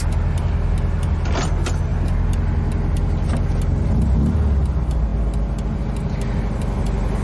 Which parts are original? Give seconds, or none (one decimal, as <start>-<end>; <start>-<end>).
0.0-7.2